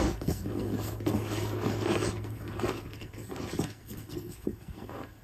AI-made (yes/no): yes